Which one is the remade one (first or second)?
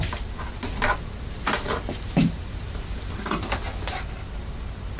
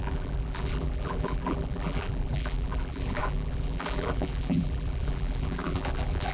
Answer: second